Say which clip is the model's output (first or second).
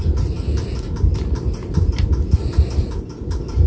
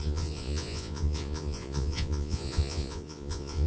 second